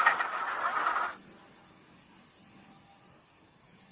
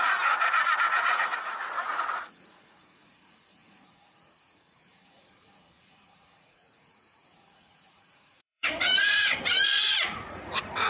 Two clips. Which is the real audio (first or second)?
first